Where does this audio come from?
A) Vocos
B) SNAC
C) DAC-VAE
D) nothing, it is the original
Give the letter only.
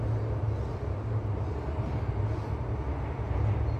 D